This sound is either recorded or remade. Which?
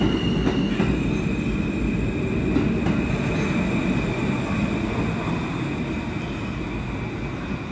recorded